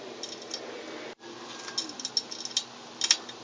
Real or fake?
real